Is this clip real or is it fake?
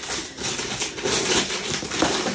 real